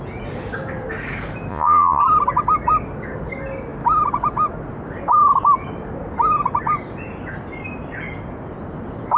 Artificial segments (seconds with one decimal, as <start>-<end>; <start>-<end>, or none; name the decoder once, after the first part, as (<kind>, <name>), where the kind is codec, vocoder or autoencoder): 1.5-2.0 (vocoder, Vocos)